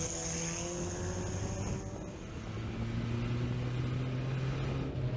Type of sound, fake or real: real